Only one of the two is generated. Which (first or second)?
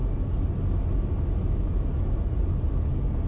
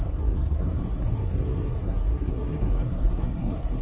second